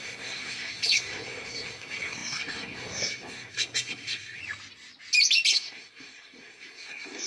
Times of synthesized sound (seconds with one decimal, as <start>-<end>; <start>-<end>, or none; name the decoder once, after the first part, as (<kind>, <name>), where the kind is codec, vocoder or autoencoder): 0.0-4.4 (codec, SNAC); 5.5-7.3

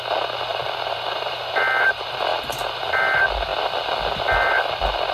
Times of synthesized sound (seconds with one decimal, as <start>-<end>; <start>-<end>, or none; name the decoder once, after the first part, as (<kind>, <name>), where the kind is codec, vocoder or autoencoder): 0.5-1.6 (vocoder, BigVGAN v2); 2.3-3.0